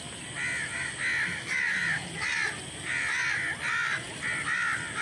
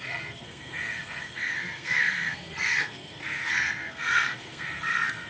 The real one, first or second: first